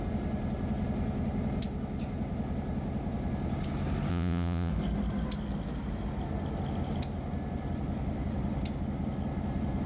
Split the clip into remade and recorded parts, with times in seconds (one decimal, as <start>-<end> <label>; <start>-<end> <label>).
0.0-4.1 recorded; 4.1-4.7 remade; 4.7-9.9 recorded